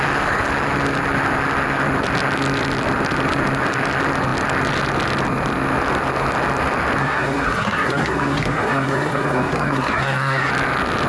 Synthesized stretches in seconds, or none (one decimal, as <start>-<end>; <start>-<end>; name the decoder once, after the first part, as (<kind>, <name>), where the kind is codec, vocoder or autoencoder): 7.0-10.5 (codec, SNAC)